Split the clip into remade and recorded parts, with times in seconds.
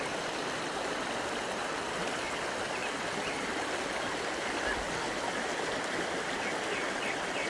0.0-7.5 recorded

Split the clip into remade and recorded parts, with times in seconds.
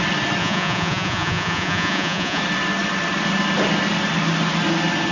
0.0-0.4 recorded; 0.4-2.4 remade; 2.4-5.1 recorded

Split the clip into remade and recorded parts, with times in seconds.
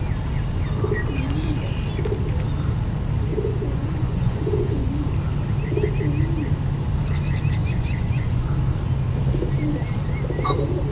0.0-3.3 recorded; 3.3-4.9 remade; 4.9-7.6 recorded; 7.6-8.5 remade; 8.5-10.9 recorded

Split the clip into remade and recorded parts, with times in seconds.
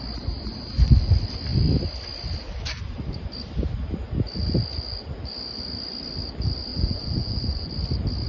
0.0-6.7 recorded; 6.7-7.7 remade; 7.7-8.3 recorded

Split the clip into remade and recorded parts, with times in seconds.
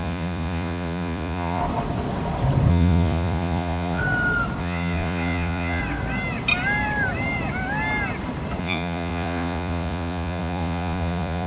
0.0-1.6 remade; 1.6-2.7 recorded; 2.7-4.0 remade; 4.0-4.6 recorded; 4.6-5.8 remade; 5.8-8.6 recorded; 8.6-11.5 remade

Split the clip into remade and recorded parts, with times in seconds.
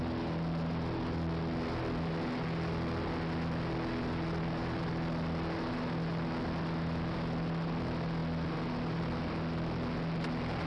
0.0-10.7 recorded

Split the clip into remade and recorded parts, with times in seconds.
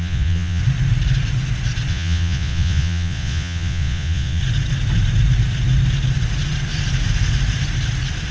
0.0-0.6 remade; 0.6-1.9 recorded; 1.9-4.4 remade; 4.4-8.3 recorded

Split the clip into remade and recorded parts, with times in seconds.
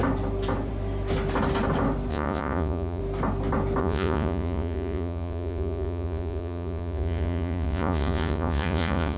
0.0-2.1 recorded; 2.1-3.0 remade; 3.0-3.8 recorded; 3.8-9.2 remade